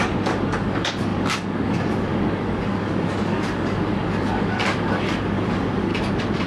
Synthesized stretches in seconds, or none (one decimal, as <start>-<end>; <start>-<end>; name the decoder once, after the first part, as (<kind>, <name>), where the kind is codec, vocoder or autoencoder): 0.0-5.9 (codec, DAC)